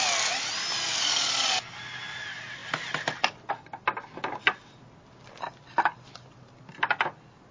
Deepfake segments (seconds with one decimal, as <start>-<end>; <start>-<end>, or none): none